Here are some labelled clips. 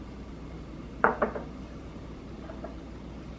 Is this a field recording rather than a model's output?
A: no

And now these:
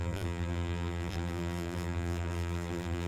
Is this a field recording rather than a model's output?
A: no